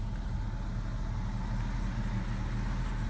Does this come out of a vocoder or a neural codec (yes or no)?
no